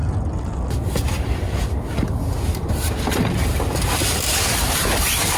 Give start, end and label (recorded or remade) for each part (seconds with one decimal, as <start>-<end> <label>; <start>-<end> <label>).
0.0-5.4 recorded